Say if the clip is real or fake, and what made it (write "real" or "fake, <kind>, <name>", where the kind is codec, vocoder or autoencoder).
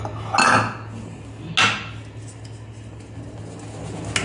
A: real